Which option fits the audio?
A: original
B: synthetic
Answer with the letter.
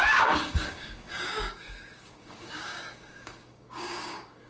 B